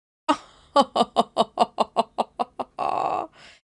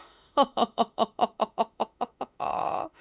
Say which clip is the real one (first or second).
first